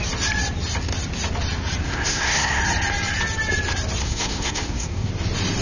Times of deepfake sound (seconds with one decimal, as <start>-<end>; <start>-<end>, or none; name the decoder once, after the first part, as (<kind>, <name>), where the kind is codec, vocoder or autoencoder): 1.8-2.6 (codec, SNAC); 4.0-5.1